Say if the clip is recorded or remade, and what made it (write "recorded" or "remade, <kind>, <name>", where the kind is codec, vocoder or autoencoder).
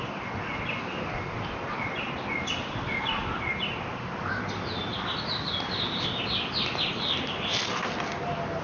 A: recorded